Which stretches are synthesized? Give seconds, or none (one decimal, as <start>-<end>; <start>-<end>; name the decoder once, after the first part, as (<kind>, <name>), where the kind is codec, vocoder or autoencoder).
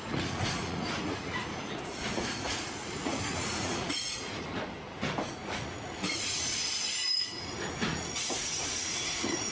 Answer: 0.0-4.6 (vocoder, Vocos); 5.3-6.5; 7.2-9.5